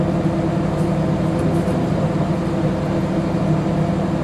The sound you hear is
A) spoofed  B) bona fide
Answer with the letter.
B